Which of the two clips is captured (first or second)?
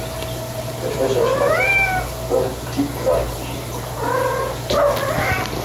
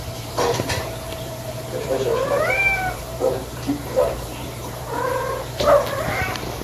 first